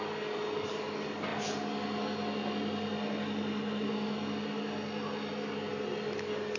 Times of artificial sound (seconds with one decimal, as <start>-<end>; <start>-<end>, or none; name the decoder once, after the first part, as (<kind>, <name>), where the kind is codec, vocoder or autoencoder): none